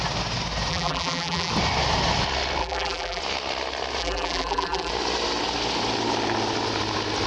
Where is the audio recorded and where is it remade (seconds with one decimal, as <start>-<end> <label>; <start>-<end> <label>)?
0.0-0.7 recorded; 0.7-1.5 remade; 1.5-2.6 recorded; 2.6-3.2 remade; 3.2-4.0 recorded; 4.0-4.9 remade; 4.9-7.3 recorded